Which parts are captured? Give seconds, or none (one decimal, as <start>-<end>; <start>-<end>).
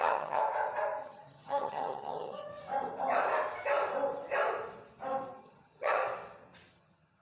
0.4-1.0; 2.5-5.4; 6.0-6.7